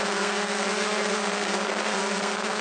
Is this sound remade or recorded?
remade